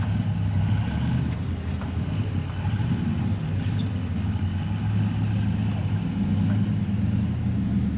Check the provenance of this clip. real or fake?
real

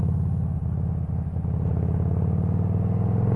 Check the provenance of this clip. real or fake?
real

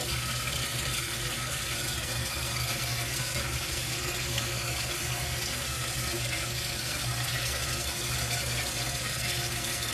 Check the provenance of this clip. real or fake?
fake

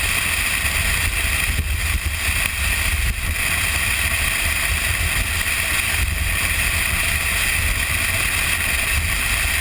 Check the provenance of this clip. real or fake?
real